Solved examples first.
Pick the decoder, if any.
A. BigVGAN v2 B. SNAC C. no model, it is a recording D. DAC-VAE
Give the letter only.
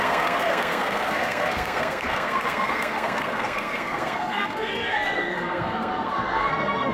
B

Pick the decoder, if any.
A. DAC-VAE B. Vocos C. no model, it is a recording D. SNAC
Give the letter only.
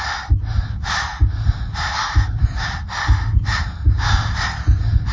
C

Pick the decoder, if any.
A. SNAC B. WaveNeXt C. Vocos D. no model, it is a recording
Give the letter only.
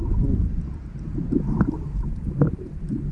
D